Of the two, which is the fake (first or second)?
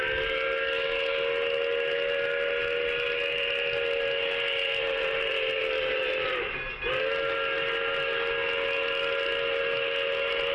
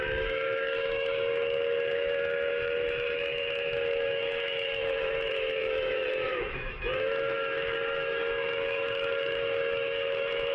second